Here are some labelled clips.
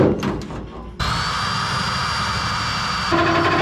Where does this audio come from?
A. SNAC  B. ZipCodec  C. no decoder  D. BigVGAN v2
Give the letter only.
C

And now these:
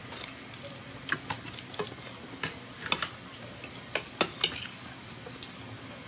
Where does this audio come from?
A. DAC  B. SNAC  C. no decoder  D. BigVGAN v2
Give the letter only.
C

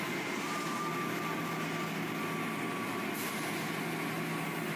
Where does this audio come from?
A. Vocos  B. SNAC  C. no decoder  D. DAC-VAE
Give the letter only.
C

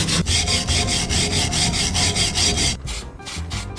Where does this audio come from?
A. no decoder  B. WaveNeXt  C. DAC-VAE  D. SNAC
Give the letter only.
A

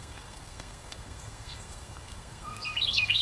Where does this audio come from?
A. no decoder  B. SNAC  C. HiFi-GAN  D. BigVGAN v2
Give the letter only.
B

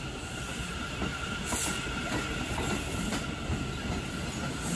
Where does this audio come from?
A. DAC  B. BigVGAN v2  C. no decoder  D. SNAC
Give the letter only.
C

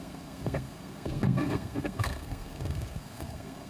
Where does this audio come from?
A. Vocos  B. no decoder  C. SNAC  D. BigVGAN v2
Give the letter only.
C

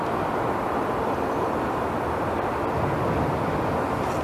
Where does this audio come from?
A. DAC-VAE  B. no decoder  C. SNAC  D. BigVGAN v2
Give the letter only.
B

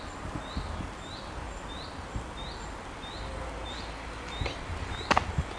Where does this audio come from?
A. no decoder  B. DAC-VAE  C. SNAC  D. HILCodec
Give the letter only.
A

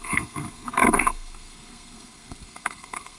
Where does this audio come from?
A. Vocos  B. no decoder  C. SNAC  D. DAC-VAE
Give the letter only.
C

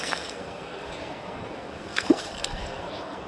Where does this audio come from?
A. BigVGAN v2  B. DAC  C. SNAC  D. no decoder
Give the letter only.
C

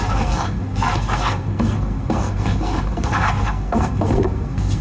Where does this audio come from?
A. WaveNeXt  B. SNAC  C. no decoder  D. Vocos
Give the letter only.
B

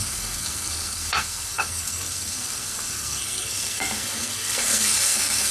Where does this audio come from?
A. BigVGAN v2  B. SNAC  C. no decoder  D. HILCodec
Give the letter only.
B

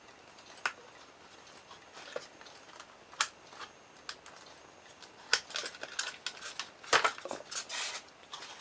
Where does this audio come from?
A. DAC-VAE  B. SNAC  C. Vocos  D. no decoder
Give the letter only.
D